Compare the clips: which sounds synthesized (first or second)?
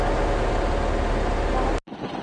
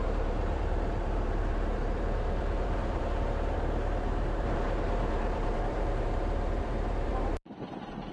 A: second